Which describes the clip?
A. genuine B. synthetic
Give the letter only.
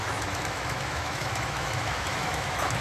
B